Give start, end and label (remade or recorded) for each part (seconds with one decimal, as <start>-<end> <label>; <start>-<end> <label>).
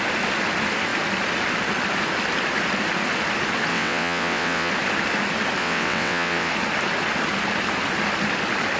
0.0-3.7 recorded; 3.7-4.7 remade; 4.7-5.6 recorded; 5.6-6.5 remade; 6.5-8.8 recorded